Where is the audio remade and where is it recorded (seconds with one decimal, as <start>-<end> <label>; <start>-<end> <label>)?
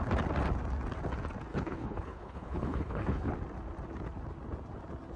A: 0.0-1.5 recorded; 1.5-3.3 remade; 3.3-5.2 recorded